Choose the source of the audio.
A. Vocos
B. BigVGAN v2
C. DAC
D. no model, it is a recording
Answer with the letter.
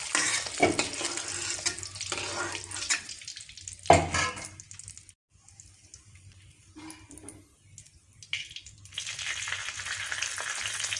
D